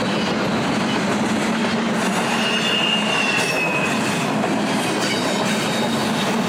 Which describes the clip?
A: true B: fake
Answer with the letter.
A